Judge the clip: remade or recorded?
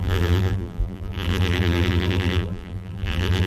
remade